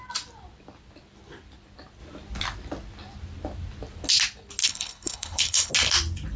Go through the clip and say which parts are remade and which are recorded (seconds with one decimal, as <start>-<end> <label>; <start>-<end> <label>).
0.0-4.6 recorded; 4.6-5.7 remade; 5.7-6.4 recorded